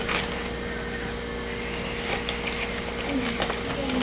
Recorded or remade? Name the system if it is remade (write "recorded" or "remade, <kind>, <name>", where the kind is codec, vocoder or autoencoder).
recorded